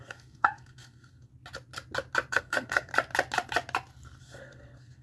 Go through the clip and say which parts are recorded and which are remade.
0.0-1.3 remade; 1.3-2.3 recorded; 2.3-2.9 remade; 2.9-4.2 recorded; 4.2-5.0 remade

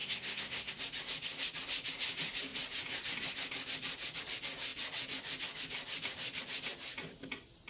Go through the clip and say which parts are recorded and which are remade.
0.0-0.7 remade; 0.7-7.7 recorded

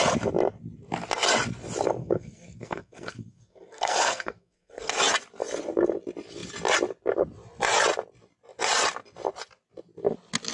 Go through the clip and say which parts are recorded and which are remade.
0.0-2.0 recorded; 2.0-4.9 remade; 4.9-10.5 recorded